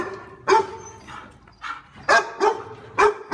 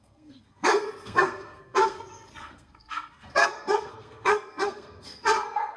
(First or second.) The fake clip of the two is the second